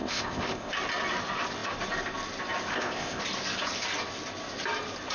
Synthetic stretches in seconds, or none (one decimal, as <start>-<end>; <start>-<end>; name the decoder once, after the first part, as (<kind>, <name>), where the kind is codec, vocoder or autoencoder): 0.0-0.7 (codec, ZipCodec); 2.7-3.2